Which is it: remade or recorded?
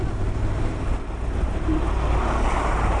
recorded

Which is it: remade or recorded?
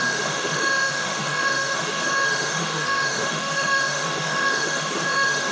remade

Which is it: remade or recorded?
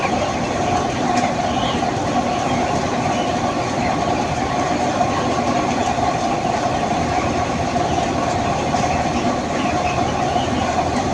recorded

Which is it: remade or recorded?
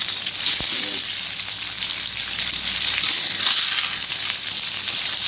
recorded